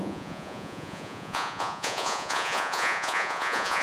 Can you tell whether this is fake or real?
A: fake